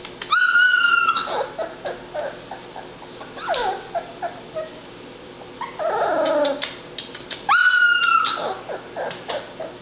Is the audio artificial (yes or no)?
no